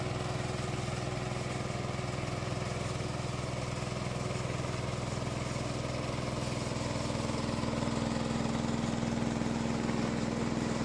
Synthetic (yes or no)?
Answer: no